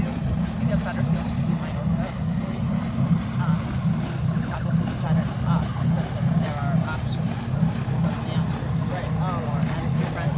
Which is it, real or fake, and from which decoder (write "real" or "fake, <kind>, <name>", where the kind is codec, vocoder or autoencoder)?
real